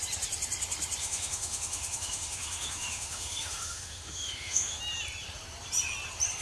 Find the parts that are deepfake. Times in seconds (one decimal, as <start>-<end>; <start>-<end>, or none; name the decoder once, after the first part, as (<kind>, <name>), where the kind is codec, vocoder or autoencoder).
1.0-4.8 (autoencoder, DAC-VAE)